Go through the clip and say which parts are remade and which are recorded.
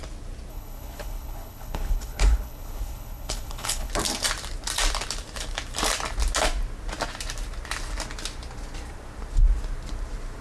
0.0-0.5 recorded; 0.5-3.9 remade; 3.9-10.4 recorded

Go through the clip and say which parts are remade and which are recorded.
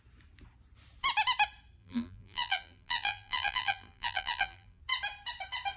0.0-1.8 recorded; 1.8-4.8 remade; 4.8-5.8 recorded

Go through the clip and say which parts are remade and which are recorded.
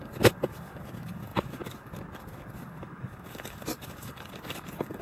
0.0-5.0 remade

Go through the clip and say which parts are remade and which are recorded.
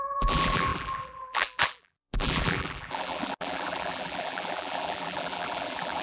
0.0-6.0 remade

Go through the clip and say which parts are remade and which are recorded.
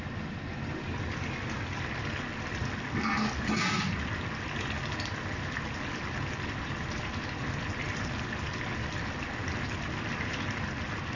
0.0-11.2 recorded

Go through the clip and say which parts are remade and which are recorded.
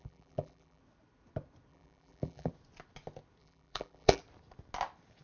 0.0-0.8 remade; 0.8-1.7 recorded; 1.7-2.5 remade; 2.5-3.4 recorded; 3.4-4.2 remade; 4.2-5.2 recorded